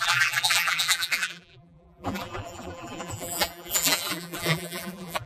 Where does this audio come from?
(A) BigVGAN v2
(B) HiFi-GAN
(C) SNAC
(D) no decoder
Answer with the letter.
A